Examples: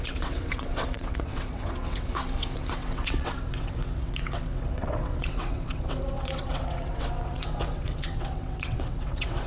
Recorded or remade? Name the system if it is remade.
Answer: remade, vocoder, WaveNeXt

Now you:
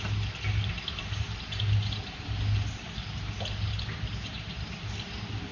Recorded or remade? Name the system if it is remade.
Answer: recorded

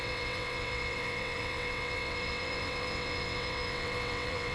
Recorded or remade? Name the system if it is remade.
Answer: remade, vocoder, WaveNeXt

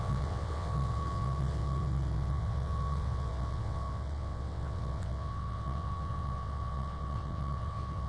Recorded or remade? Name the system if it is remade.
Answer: remade, vocoder, WaveNeXt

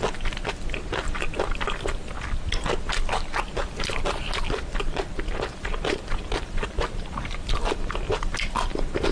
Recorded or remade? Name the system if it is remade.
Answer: recorded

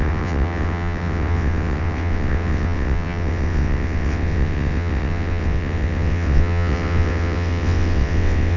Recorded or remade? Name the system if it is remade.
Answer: remade, vocoder, WaveNeXt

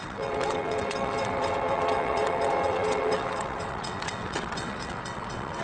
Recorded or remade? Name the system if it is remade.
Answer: remade, vocoder, WaveNeXt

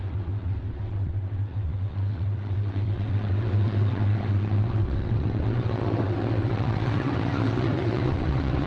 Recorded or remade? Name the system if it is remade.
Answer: remade, vocoder, WaveNeXt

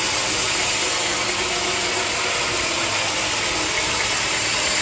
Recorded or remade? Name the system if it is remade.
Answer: recorded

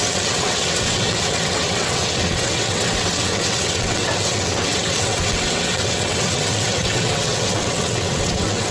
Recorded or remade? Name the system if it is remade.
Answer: remade, vocoder, WaveNeXt